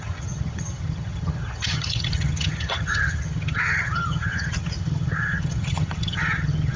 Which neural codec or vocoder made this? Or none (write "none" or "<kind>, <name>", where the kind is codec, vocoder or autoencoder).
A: vocoder, HiFi-GAN